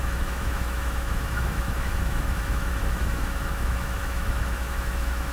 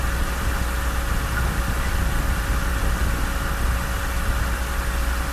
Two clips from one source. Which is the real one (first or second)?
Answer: second